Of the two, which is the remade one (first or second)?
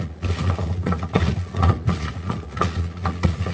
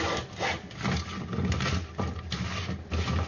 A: first